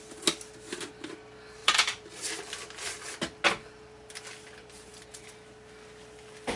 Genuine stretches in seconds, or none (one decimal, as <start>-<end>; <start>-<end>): 0.0-1.6; 2.1-4.6; 5.1-6.6